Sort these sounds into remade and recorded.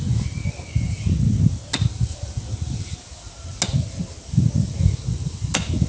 recorded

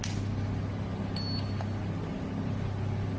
recorded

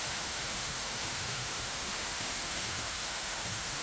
remade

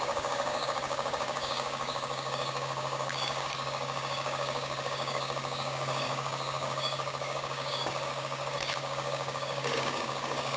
remade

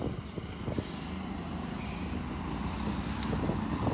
recorded